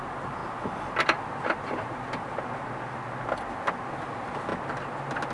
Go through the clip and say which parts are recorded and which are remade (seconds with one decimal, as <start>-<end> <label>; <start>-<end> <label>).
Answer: 0.0-5.3 recorded

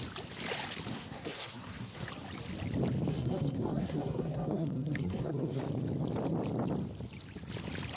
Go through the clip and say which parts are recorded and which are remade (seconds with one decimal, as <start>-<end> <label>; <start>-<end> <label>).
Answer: 0.0-0.9 recorded; 0.9-2.1 remade; 2.1-3.1 recorded; 3.1-5.6 remade; 5.6-8.0 recorded

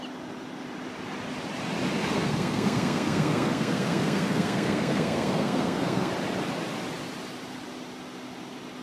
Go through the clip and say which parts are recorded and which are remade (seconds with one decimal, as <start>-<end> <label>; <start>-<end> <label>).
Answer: 0.0-2.0 recorded; 2.0-6.1 remade; 6.1-8.8 recorded

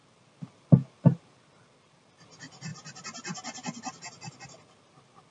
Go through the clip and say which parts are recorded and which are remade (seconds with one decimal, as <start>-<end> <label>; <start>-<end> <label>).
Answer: 0.0-5.3 recorded

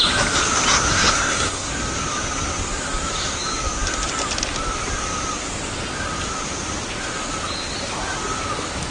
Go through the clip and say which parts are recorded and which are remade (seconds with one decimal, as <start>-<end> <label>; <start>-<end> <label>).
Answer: 0.0-0.9 recorded; 0.9-1.7 remade; 1.7-8.9 recorded

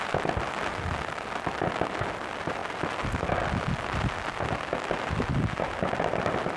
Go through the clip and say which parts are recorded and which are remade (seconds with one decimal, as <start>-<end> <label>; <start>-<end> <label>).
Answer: 0.0-6.6 recorded

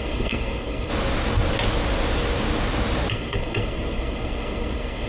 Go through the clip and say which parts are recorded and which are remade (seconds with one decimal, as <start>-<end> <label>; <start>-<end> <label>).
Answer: 0.0-0.9 remade; 0.9-3.1 recorded; 3.1-5.1 remade